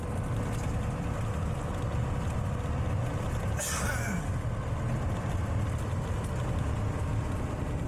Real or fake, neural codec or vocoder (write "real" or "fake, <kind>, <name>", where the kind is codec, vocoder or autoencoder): real